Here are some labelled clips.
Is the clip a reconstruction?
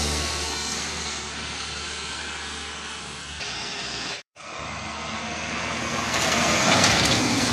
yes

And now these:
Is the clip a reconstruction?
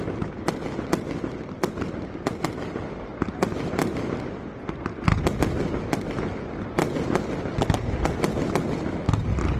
no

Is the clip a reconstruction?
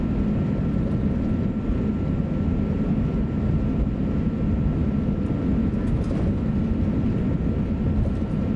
no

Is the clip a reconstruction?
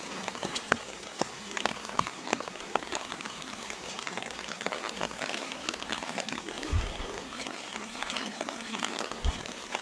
yes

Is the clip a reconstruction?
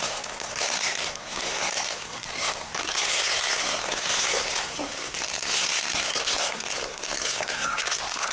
yes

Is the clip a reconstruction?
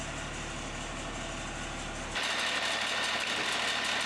no